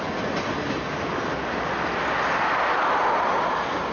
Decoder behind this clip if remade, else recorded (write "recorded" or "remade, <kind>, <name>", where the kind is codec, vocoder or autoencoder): recorded